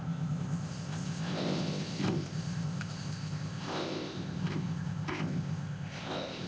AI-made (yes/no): yes